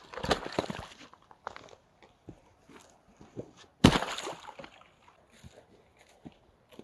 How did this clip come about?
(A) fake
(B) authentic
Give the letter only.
B